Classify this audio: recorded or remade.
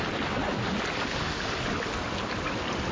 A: recorded